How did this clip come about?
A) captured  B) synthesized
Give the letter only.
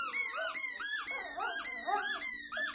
A